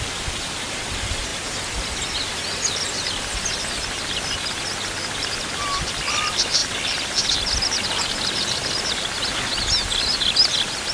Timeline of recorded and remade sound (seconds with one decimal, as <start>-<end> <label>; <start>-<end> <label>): 0.0-10.9 recorded